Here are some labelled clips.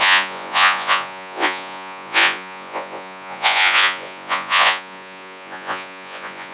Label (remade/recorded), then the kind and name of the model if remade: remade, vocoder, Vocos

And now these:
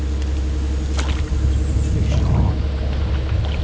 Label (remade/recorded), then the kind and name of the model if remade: recorded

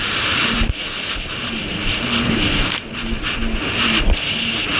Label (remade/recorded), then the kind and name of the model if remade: recorded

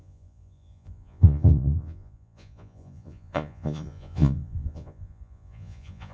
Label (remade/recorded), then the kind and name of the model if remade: remade, vocoder, Vocos